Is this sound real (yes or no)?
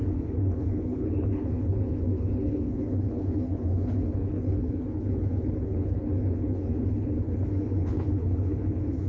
no